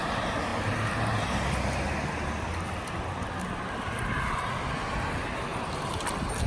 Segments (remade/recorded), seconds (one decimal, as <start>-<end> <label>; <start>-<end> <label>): 0.0-6.5 recorded